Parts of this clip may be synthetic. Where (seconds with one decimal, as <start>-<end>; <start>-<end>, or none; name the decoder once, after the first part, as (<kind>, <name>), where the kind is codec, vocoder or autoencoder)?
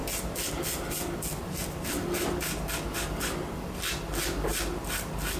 none